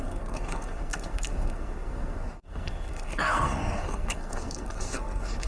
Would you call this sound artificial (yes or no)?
yes